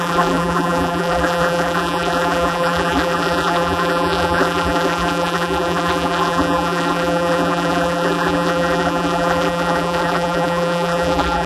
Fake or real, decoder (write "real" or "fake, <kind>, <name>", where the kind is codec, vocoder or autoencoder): fake, vocoder, BigVGAN v2